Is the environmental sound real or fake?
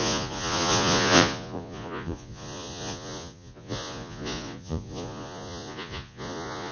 fake